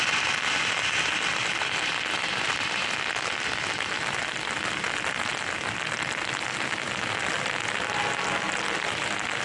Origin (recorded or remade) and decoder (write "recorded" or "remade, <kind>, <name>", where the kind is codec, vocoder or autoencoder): recorded